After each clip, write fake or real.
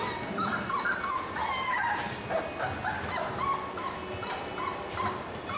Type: real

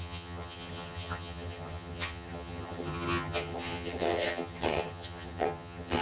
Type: fake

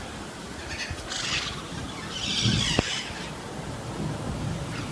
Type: real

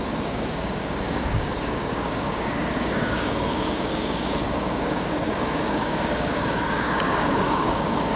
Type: fake